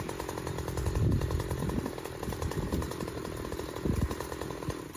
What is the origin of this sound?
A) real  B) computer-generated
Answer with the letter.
A